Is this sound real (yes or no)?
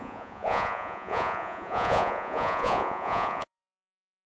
no